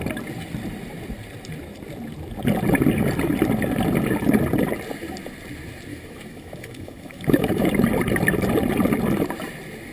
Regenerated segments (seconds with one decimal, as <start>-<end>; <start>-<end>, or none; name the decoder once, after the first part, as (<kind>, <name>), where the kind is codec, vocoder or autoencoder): 5.9-7.7 (autoencoder, DAC-VAE)